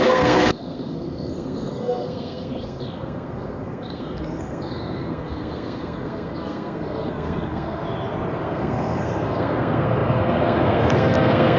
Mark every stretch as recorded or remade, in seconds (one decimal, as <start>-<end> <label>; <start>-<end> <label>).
0.0-7.8 remade; 7.8-8.4 recorded; 8.4-11.6 remade